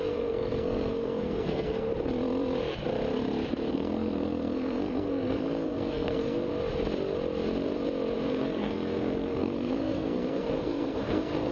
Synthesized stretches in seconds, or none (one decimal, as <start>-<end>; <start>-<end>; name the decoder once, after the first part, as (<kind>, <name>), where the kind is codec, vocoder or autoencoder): 0.0-1.9 (codec, SNAC); 3.7-6.5; 8.3-11.5